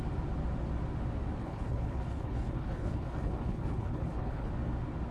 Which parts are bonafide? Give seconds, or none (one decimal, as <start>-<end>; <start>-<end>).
0.0-1.4; 4.5-5.1